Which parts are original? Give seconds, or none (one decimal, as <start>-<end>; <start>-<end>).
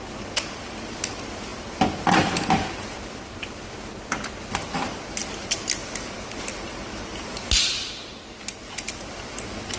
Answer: 0.0-9.8